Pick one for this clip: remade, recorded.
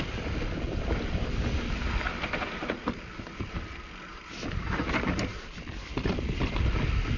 recorded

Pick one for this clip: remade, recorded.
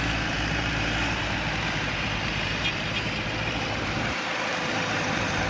remade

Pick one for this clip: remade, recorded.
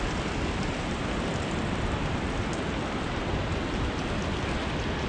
recorded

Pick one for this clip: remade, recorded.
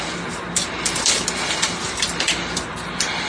recorded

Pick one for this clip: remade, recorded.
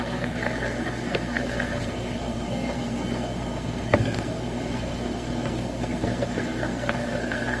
remade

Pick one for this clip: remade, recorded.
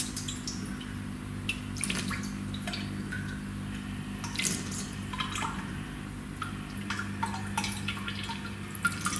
recorded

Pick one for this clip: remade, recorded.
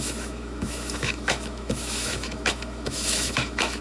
remade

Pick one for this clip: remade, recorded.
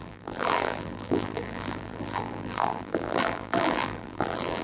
remade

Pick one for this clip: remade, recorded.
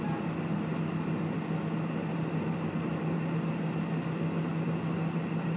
recorded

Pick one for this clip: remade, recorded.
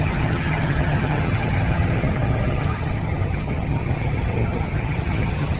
remade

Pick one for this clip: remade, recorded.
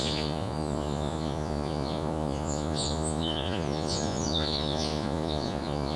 remade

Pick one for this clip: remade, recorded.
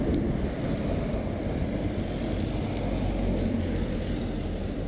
recorded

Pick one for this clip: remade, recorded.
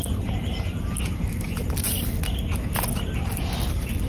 recorded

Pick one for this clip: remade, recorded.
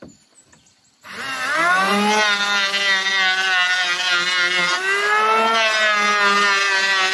recorded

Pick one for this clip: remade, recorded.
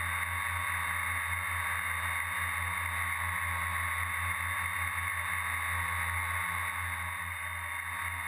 recorded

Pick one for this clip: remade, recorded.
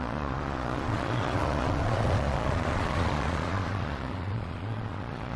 remade